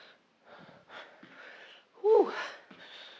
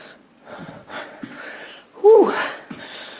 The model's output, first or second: second